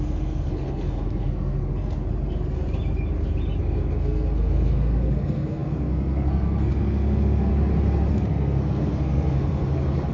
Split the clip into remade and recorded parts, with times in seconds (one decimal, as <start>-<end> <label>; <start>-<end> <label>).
0.0-1.6 remade; 1.6-3.6 recorded; 3.6-7.5 remade; 7.5-8.1 recorded; 8.1-10.1 remade